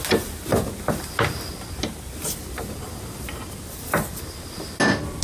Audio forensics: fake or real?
real